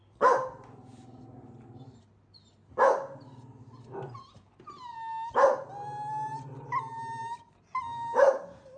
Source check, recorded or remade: recorded